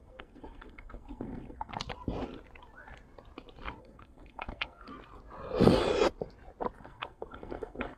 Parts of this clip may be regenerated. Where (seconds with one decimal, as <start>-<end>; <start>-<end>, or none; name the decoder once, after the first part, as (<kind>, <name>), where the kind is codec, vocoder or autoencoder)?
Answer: 0.0-1.7 (codec, SNAC); 3.8-4.9; 6.8-8.0